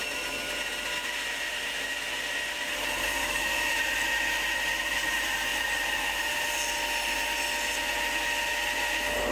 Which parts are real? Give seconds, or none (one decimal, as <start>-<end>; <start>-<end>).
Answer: 0.0-3.2; 3.7-9.3

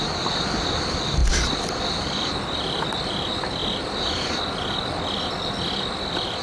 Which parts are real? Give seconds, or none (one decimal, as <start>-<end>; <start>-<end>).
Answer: 0.0-6.4

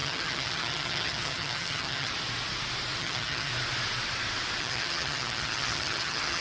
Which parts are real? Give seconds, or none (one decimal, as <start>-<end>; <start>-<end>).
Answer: 2.1-3.0; 3.5-4.6

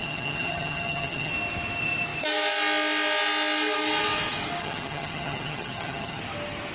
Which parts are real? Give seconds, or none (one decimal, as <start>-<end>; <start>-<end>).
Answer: 1.3-4.6; 6.2-6.7

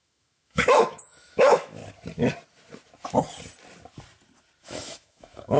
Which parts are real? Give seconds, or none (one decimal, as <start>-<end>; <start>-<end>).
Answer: 1.8-4.6

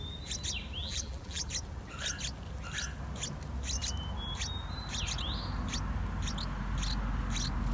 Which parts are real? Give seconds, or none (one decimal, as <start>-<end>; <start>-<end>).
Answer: 0.0-0.8; 1.5-7.7

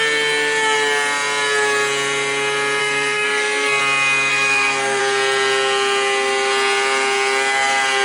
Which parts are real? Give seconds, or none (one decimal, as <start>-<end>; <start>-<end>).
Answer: 0.0-2.8; 3.8-4.3; 5.0-8.0

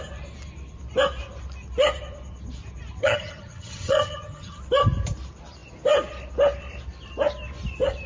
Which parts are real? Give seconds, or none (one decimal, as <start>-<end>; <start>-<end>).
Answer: 0.0-3.0; 4.6-8.1